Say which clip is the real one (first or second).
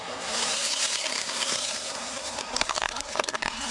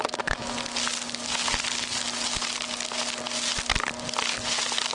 second